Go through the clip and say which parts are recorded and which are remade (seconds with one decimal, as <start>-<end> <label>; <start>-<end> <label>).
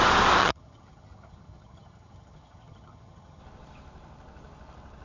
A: 0.0-0.4 recorded; 0.4-3.4 remade; 3.4-5.0 recorded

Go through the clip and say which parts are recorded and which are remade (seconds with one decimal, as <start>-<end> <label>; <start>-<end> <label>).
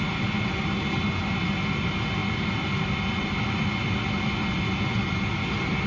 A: 0.0-5.9 recorded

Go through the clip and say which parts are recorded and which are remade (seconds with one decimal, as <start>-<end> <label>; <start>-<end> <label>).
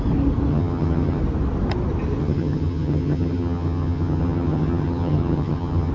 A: 0.0-0.5 recorded; 0.5-1.2 remade; 1.2-2.2 recorded; 2.2-5.9 remade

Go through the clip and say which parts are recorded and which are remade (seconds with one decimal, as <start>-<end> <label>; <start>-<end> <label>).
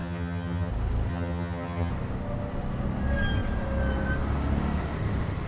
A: 0.0-0.7 remade; 0.7-1.1 recorded; 1.1-1.9 remade; 1.9-5.5 recorded